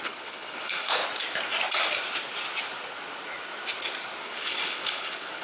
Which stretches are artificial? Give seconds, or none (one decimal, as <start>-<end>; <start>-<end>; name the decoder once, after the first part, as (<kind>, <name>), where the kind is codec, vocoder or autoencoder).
0.0-1.0 (codec, HILCodec); 4.2-5.4